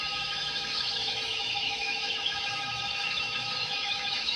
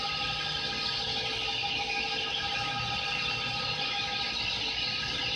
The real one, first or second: second